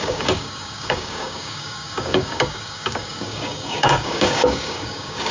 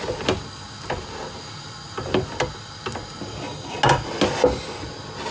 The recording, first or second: second